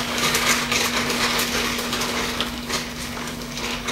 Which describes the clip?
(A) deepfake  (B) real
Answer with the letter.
A